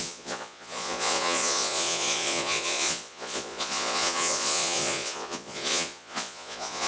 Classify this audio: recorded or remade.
remade